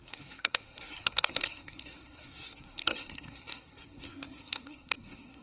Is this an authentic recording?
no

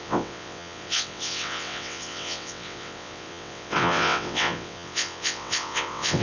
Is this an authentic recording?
no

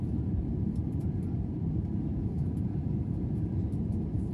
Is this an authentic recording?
no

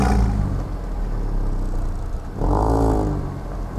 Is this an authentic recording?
yes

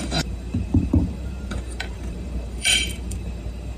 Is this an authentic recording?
no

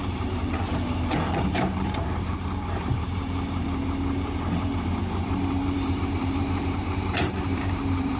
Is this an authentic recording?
no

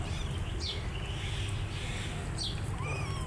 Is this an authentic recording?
yes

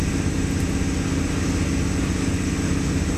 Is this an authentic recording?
yes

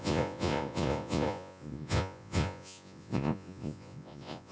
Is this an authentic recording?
no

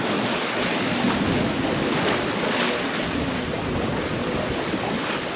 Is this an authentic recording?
yes